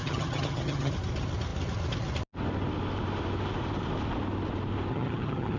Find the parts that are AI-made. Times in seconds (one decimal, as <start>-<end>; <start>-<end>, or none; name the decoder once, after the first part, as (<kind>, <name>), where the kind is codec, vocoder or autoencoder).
0.0-0.9 (vocoder, HiFi-GAN); 4.9-5.6